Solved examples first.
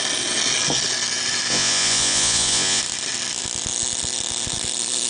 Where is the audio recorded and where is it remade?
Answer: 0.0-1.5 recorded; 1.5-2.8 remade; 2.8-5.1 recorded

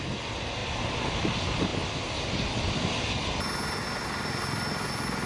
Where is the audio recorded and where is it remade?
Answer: 0.0-5.3 recorded

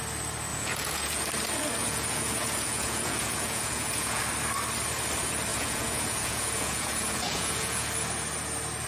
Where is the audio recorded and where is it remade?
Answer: 0.0-0.5 recorded; 0.5-1.2 remade; 1.2-1.8 recorded; 1.8-4.2 remade; 4.2-5.5 recorded; 5.5-7.9 remade; 7.9-8.9 recorded

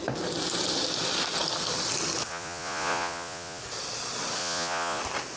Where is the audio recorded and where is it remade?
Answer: 0.0-2.3 recorded; 2.3-3.6 remade; 3.6-4.4 recorded; 4.4-5.0 remade; 5.0-5.4 recorded